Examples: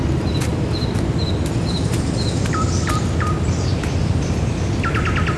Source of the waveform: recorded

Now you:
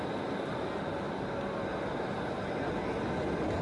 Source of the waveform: recorded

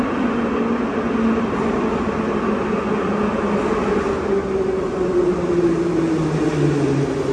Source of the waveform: recorded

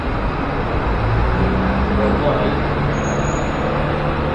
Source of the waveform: recorded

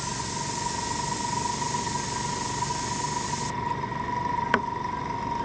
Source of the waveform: recorded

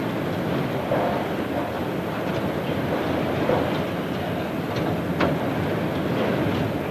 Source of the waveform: recorded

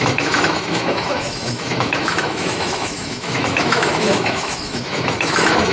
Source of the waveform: remade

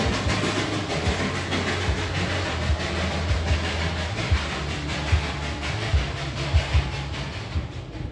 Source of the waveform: recorded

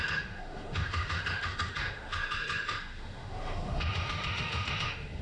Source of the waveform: remade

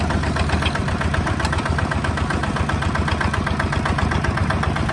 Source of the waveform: recorded